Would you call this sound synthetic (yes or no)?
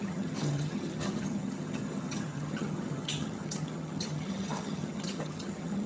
yes